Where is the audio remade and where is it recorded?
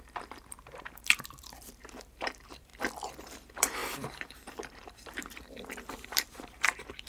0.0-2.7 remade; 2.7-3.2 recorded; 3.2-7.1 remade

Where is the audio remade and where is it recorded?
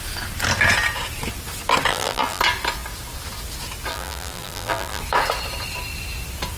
0.0-1.9 recorded; 1.9-2.4 remade; 2.4-3.9 recorded; 3.9-5.0 remade; 5.0-6.6 recorded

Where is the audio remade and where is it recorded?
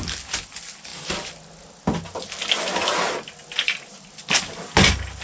0.0-5.2 recorded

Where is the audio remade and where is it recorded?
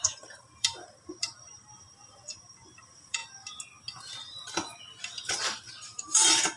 0.0-3.2 remade; 3.2-5.7 recorded; 5.7-6.6 remade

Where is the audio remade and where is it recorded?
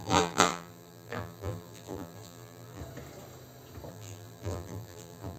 0.0-2.8 remade; 2.8-3.9 recorded; 3.9-5.4 remade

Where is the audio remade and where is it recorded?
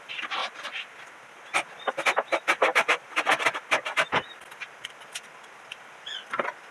0.0-2.7 recorded; 2.7-3.3 remade; 3.3-6.7 recorded